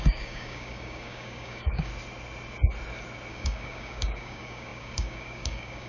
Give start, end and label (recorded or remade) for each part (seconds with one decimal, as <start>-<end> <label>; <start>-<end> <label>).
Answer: 0.0-1.9 remade; 1.9-3.3 recorded; 3.3-5.9 remade